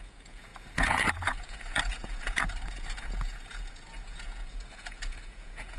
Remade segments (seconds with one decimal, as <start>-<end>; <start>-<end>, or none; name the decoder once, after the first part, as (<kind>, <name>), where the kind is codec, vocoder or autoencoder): 0.0-5.8 (vocoder, Vocos)